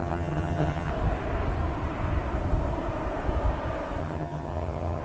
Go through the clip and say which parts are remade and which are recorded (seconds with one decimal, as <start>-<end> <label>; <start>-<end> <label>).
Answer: 0.0-0.9 remade; 0.9-4.0 recorded; 4.0-5.0 remade